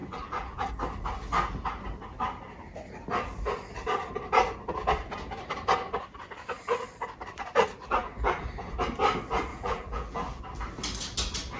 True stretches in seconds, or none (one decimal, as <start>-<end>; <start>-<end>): 0.7-8.0; 8.5-9.5; 10.4-11.6